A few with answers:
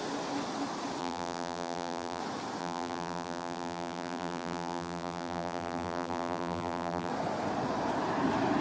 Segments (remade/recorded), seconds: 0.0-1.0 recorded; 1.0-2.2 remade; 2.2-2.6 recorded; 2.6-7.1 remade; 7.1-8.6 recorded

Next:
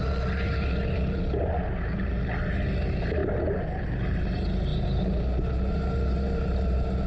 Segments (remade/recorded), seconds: 0.0-7.1 recorded

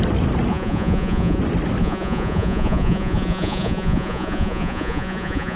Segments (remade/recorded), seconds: 0.0-0.5 recorded; 0.5-1.4 remade; 1.4-1.8 recorded; 1.8-5.6 remade